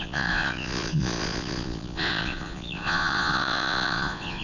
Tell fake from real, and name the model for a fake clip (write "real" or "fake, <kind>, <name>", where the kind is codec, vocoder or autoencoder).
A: fake, vocoder, Vocos